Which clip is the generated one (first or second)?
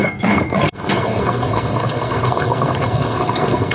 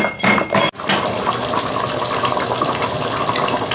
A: first